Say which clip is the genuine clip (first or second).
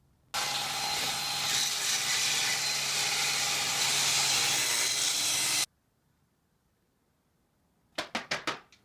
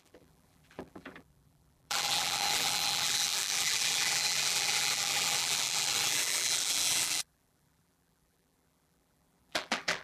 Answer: first